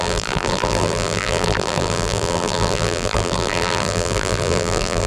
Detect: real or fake fake